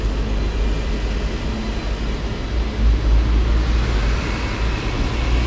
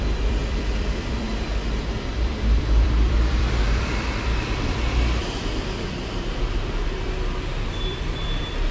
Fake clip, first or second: second